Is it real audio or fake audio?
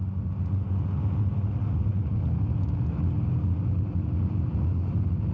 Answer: real